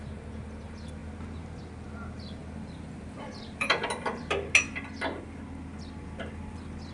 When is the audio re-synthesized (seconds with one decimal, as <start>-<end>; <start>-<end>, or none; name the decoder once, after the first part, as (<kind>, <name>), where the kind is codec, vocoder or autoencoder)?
2.4-3.9 (vocoder, BigVGAN v2)

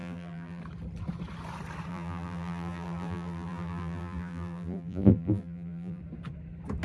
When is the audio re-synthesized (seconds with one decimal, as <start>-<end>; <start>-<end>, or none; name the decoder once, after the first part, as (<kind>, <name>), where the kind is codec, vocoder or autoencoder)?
0.0-0.6 (vocoder, BigVGAN v2); 1.9-6.0